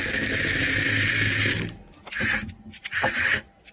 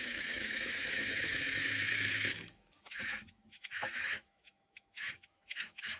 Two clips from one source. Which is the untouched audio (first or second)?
first